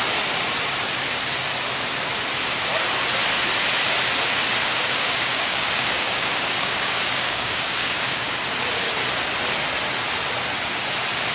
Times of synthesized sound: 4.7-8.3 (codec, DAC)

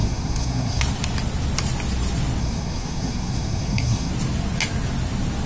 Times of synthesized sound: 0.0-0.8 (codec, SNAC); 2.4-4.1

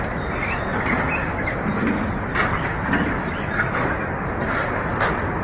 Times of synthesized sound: none

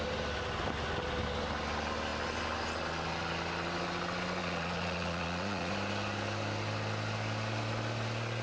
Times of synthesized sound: 4.4-5.7 (vocoder, Vocos)

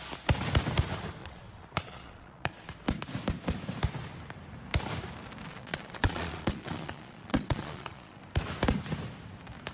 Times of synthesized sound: 1.2-2.7 (vocoder, Vocos); 5.5-8.2

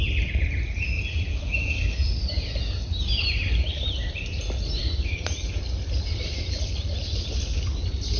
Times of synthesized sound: none